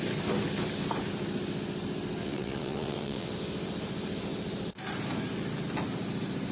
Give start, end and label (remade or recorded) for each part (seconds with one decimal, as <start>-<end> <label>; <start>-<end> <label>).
0.0-2.2 recorded; 2.2-3.3 remade; 3.3-6.5 recorded